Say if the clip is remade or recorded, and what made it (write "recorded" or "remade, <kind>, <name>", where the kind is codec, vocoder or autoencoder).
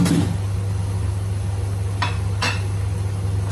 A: recorded